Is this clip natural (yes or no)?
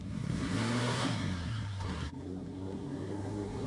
no